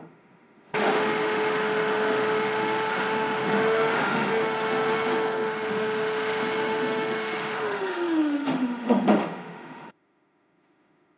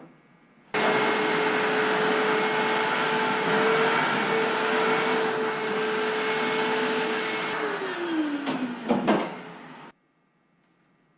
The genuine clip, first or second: second